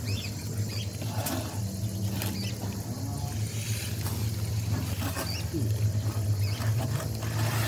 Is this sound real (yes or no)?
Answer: yes